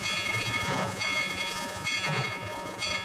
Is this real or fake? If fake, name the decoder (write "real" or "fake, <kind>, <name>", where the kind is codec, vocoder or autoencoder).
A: fake, vocoder, Vocos